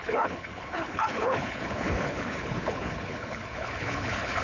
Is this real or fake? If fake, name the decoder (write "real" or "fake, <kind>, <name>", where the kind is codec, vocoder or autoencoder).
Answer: fake, codec, HILCodec